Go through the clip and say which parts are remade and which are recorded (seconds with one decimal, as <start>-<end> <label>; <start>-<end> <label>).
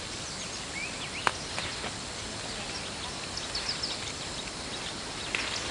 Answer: 0.0-5.7 recorded